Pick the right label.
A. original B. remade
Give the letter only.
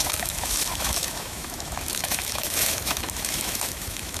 B